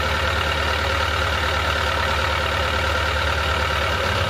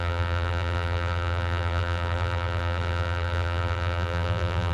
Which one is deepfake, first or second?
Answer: second